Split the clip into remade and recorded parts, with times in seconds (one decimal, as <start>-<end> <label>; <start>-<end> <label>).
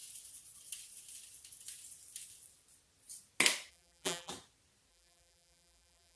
0.0-3.7 recorded; 3.7-4.3 remade; 4.3-4.9 recorded; 4.9-6.2 remade